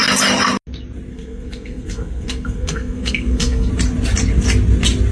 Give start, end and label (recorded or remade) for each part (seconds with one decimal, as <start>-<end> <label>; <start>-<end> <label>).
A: 0.0-1.1 recorded; 1.1-3.7 remade; 3.7-5.1 recorded